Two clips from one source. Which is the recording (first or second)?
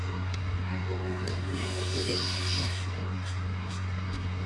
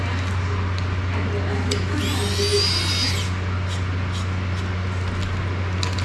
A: second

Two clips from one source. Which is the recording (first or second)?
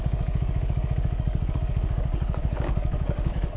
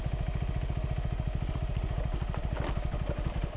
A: second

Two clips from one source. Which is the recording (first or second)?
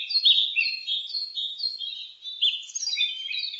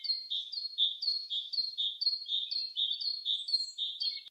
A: first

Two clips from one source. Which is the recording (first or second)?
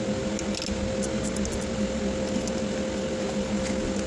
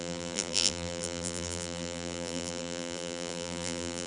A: first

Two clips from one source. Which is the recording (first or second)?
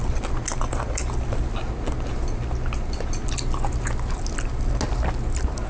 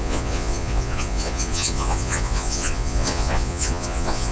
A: first